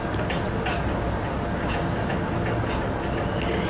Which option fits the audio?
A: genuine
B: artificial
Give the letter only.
A